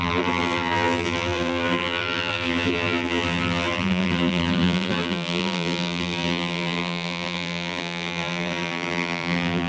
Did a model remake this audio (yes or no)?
yes